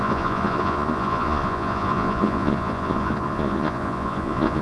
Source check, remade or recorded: remade